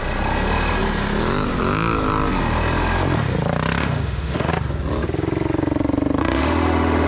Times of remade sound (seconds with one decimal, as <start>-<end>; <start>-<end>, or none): 3.8-4.5; 6.2-7.1